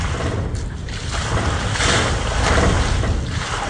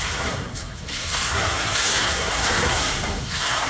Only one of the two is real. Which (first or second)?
first